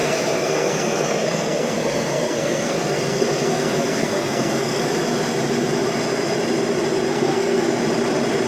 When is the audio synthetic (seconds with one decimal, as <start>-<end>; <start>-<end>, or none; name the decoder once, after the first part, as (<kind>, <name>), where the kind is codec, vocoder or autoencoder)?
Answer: 0.0-4.8 (codec, SNAC); 7.1-7.8